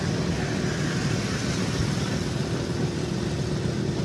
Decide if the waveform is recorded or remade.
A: recorded